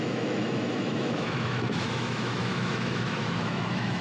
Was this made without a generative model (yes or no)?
no